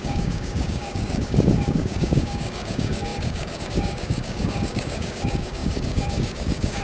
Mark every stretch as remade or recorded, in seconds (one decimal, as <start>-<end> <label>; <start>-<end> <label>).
0.0-6.8 remade